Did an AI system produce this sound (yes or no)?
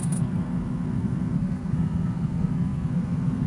yes